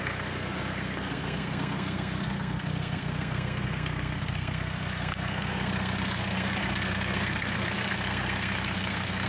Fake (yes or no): yes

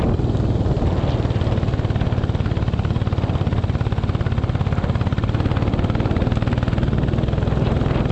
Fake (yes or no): no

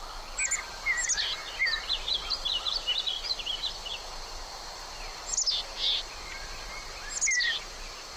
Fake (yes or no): no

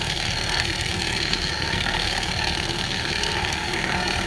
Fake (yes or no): yes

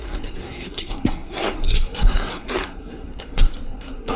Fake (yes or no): yes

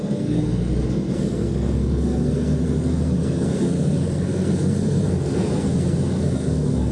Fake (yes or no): yes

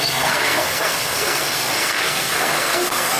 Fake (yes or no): yes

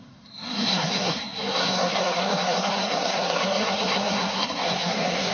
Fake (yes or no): yes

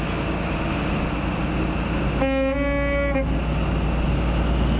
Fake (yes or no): no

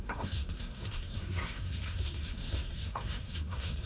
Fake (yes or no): yes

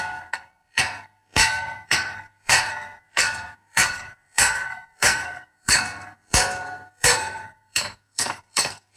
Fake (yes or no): yes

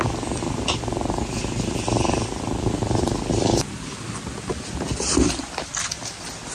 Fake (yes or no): no